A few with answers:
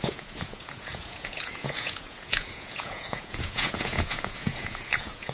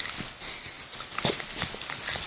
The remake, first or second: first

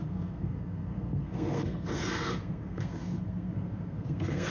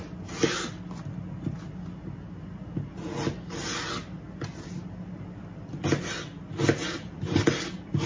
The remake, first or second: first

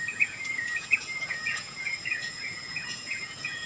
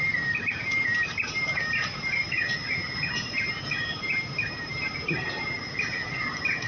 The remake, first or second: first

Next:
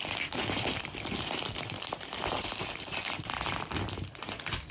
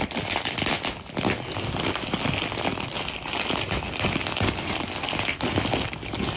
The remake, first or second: first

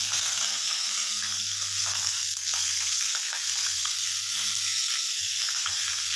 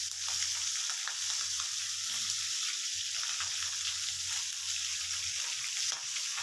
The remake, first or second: first